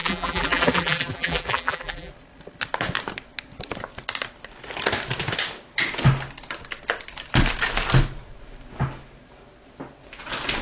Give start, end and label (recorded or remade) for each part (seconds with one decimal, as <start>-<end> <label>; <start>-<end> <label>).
0.0-2.1 remade; 2.1-10.6 recorded